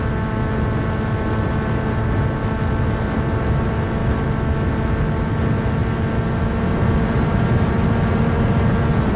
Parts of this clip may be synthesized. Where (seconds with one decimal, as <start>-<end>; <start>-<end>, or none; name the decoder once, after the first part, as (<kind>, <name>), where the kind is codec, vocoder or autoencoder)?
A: none